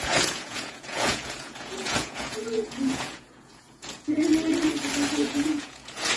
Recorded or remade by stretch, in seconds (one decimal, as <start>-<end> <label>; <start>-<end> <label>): 0.0-4.3 remade; 4.3-5.1 recorded; 5.1-6.2 remade

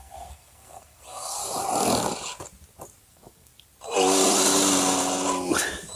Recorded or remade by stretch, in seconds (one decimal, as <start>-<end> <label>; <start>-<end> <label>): 0.0-1.4 remade; 1.4-3.1 recorded; 3.1-3.5 remade; 3.5-6.0 recorded

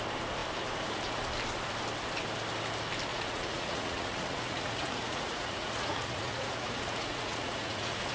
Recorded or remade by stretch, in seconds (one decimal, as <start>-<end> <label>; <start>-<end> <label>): 0.0-3.1 recorded; 3.1-8.1 remade

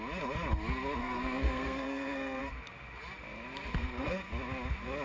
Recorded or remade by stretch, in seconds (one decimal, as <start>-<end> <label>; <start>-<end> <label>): 0.0-1.0 recorded; 1.0-2.4 remade; 2.4-3.7 recorded; 3.7-4.3 remade; 4.3-5.0 recorded